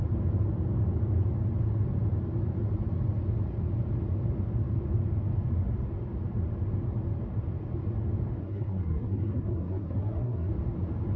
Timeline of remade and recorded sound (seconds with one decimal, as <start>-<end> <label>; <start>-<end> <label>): 0.0-8.4 recorded; 8.4-10.5 remade; 10.5-11.2 recorded